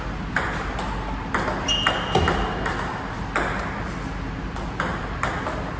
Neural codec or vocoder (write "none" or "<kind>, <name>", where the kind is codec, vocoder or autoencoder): none